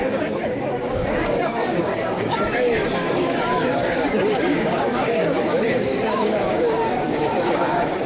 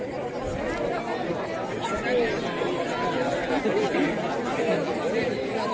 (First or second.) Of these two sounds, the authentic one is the second